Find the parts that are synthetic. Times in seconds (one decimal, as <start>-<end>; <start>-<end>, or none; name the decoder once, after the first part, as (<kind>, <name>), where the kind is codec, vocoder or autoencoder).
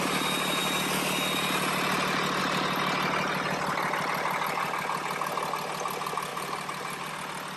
6.3-7.1 (vocoder, BigVGAN v2)